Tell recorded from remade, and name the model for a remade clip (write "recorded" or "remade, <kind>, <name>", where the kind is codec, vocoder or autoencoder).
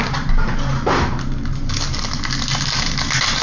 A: recorded